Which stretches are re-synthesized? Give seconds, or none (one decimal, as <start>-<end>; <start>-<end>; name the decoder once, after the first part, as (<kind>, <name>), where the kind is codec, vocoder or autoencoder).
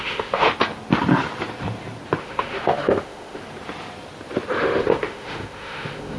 0.0-0.5 (autoencoder, DAC-VAE); 2.2-3.4; 4.6-6.2